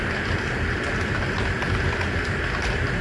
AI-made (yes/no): no